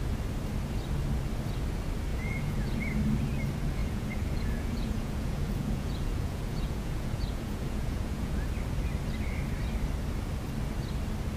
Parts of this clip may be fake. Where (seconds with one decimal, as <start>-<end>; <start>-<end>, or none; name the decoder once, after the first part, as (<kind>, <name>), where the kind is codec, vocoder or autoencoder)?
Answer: 2.1-2.9 (vocoder, Vocos); 3.8-8.5